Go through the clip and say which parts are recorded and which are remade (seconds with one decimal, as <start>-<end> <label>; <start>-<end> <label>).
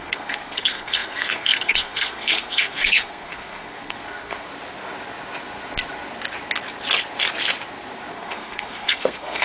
0.0-4.5 remade; 4.5-8.1 recorded; 8.1-9.4 remade